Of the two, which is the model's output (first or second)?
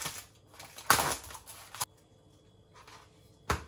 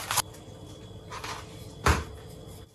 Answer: second